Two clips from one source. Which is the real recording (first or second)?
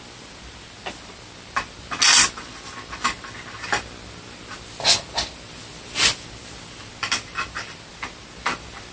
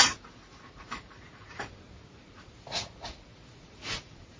first